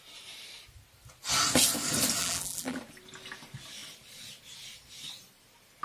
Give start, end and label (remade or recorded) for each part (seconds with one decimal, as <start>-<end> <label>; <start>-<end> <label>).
0.0-2.2 recorded; 2.2-2.8 remade; 2.8-5.8 recorded